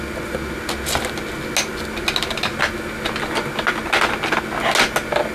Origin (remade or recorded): recorded